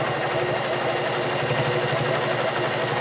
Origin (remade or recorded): recorded